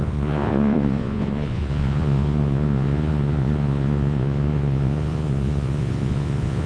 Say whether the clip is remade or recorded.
remade